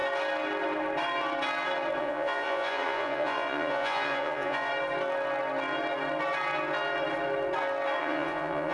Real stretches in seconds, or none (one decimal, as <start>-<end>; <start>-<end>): 0.0-2.0; 4.7-8.0